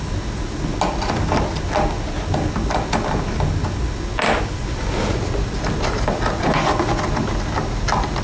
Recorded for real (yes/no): yes